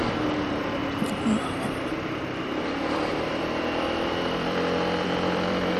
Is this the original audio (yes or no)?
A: no